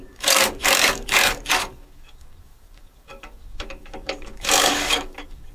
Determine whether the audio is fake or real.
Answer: fake